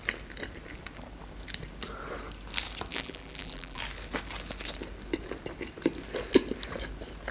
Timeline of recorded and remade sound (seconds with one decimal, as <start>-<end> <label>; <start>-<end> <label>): 0.0-2.9 recorded; 2.9-3.8 remade; 3.8-7.3 recorded